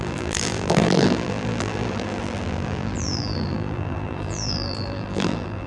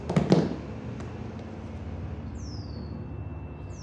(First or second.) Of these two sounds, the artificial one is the first